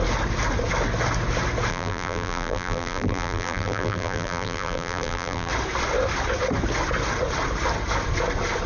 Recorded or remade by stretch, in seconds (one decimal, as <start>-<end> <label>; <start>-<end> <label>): 0.0-1.7 recorded; 1.7-5.5 remade; 5.5-8.7 recorded